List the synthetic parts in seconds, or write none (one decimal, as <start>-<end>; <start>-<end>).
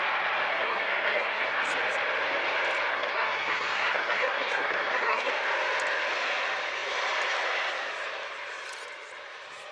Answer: 0.5-1.6; 2.9-5.3